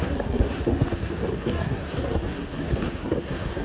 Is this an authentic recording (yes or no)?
no